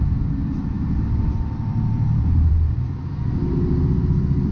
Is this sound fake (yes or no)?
yes